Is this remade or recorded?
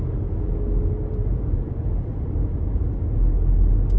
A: recorded